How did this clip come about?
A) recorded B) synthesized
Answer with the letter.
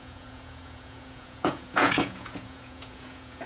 B